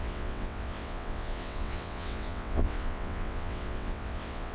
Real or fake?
fake